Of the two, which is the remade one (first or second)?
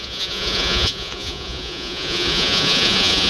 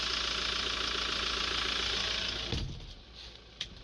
first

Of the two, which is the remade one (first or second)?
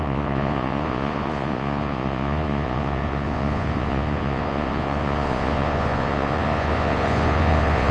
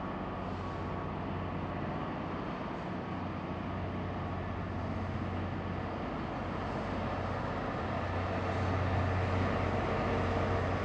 first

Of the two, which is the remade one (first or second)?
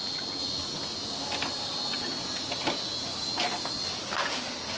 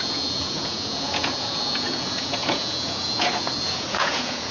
second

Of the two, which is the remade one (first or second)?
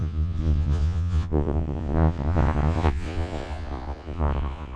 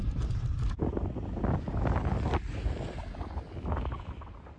first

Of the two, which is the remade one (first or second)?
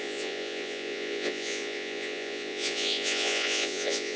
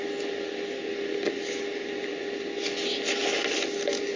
first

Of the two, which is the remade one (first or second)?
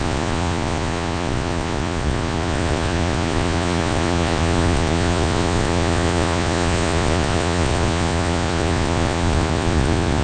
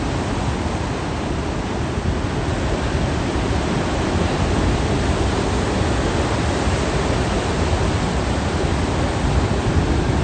first